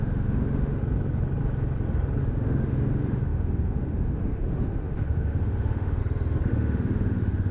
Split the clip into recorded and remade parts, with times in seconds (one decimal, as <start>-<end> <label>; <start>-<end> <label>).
0.0-0.8 remade; 0.8-2.2 recorded; 2.2-6.0 remade; 6.0-6.5 recorded; 6.5-7.5 remade